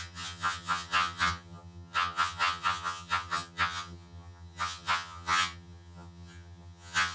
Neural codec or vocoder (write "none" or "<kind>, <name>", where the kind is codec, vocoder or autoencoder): vocoder, HiFi-GAN